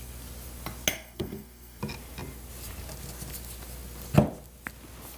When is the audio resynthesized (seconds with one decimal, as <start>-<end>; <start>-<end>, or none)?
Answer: 0.9-1.8